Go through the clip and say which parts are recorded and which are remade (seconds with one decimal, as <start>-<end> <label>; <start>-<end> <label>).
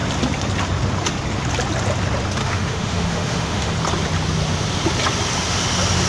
0.0-2.4 recorded; 2.4-3.7 remade; 3.7-6.1 recorded